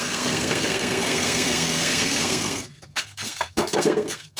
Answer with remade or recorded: remade